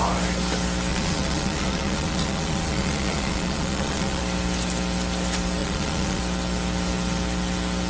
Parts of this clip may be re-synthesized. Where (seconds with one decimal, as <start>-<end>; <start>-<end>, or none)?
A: 0.9-4.2; 5.6-6.2